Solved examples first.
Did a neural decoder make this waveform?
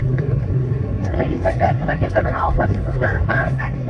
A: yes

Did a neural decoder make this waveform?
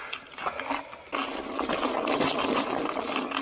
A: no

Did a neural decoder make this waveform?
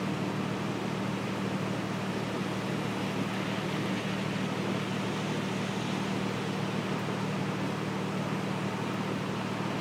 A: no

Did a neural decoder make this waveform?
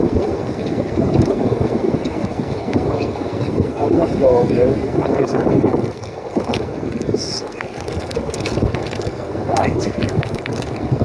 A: yes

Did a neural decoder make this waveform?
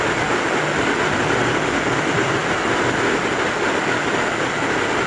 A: no